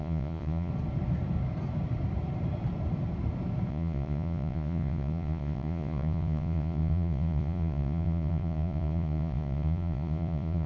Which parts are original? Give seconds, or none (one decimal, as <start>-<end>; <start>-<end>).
0.7-3.7